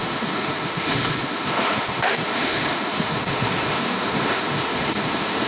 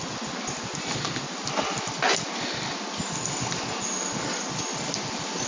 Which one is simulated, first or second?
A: first